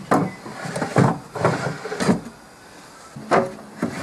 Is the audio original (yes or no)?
yes